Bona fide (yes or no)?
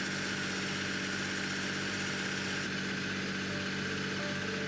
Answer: yes